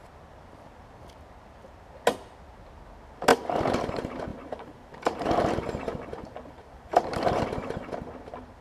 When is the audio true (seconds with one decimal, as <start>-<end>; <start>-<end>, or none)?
0.0-4.3; 7.4-8.6